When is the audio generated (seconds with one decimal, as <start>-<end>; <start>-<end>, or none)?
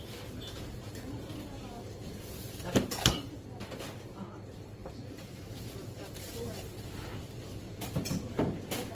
4.8-6.9